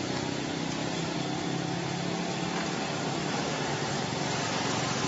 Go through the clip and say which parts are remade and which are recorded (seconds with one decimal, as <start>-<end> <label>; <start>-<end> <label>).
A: 0.0-5.1 recorded